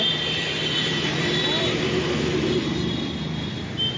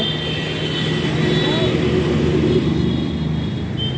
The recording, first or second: second